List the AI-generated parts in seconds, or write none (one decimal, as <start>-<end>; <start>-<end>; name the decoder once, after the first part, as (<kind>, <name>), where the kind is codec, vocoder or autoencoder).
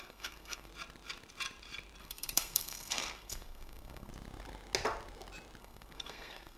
0.0-0.7 (codec, SNAC); 2.0-4.1; 5.6-6.6